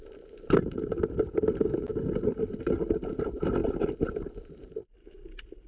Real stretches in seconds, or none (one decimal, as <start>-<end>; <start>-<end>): 0.0-5.7